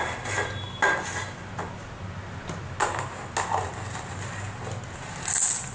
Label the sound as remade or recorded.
recorded